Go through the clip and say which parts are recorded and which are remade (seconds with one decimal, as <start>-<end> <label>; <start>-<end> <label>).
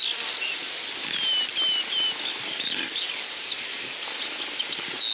0.0-5.1 recorded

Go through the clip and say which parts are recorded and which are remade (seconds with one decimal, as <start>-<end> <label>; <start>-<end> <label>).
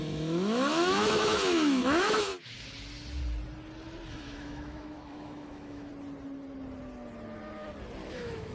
0.0-2.3 remade; 2.3-4.1 recorded; 4.1-5.9 remade; 5.9-8.1 recorded; 8.1-8.5 remade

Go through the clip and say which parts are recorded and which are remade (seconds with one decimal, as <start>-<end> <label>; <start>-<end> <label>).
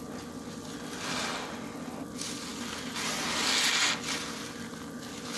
0.0-5.4 recorded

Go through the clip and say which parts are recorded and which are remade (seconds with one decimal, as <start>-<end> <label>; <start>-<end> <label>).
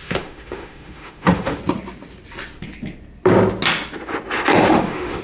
0.0-1.6 remade; 1.6-4.7 recorded; 4.7-5.2 remade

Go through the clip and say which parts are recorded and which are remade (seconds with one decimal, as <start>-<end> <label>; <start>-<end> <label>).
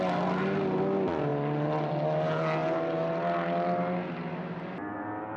0.0-5.4 recorded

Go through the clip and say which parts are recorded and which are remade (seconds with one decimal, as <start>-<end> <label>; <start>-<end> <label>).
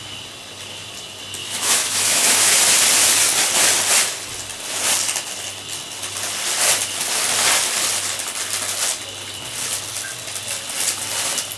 0.0-1.4 recorded; 1.4-2.6 remade; 2.6-11.6 recorded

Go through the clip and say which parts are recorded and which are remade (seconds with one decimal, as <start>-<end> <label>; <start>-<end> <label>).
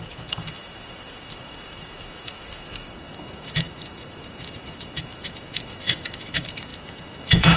0.0-7.6 remade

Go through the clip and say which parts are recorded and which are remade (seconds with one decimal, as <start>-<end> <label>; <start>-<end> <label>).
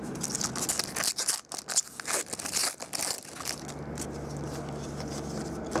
0.0-5.8 recorded